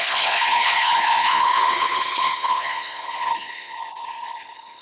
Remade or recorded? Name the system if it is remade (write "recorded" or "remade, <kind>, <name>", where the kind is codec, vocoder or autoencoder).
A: remade, codec, HILCodec